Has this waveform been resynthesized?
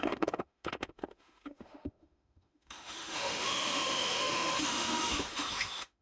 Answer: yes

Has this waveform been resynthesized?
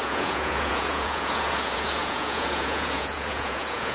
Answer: yes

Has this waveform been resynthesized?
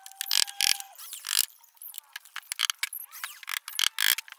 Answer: no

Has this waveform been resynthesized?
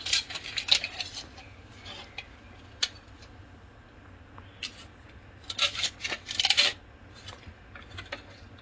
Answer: no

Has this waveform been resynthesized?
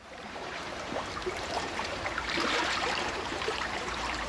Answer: yes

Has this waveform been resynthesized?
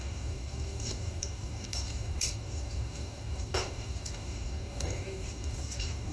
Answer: yes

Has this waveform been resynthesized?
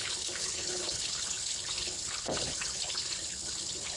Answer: yes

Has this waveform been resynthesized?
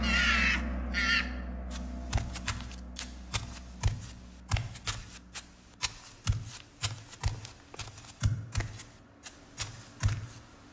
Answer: no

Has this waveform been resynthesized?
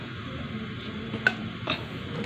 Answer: no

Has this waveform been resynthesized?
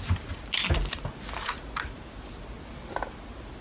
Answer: no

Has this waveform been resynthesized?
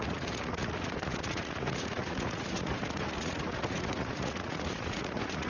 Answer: yes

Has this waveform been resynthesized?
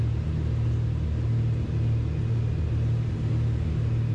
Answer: no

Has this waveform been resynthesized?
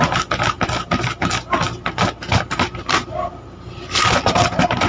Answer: no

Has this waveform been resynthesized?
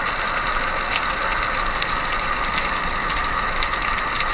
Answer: no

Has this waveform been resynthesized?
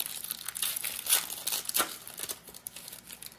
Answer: no